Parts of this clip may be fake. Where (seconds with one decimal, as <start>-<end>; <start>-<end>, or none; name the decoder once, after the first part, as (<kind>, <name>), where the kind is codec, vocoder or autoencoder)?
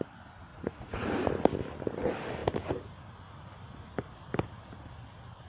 0.5-1.3 (vocoder, Vocos)